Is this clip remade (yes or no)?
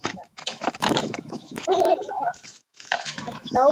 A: yes